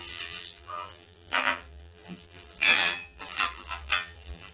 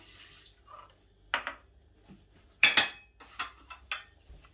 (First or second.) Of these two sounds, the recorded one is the second